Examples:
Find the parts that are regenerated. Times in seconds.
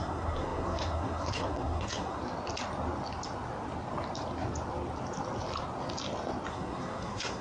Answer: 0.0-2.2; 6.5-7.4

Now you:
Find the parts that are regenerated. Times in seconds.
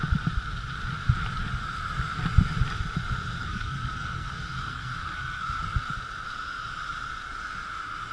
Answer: 3.4-5.6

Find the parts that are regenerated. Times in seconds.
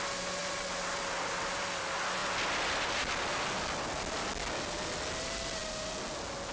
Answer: none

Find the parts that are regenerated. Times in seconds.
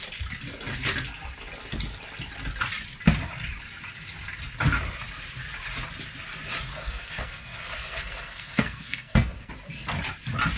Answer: 6.7-9.5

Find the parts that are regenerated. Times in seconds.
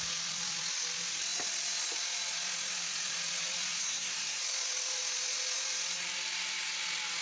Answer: 3.8-4.4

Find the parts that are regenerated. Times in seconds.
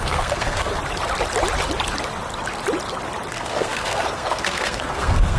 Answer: 0.0-0.7; 3.3-5.4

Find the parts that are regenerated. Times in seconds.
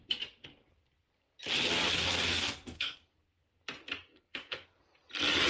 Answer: 2.3-3.0; 4.1-4.8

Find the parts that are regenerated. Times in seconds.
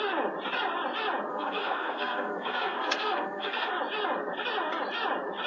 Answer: 1.3-3.7